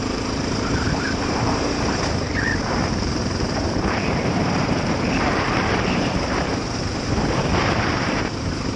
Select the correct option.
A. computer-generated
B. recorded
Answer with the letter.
A